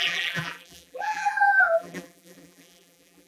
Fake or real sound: fake